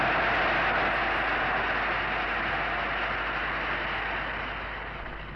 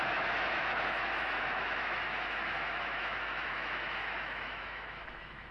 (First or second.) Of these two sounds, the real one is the first